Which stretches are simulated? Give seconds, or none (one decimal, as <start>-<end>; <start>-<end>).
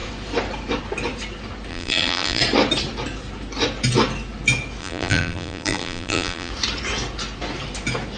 1.7-2.4; 4.8-6.5